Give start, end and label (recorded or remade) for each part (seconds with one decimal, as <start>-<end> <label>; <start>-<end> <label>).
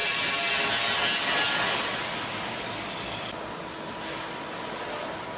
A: 0.0-5.4 recorded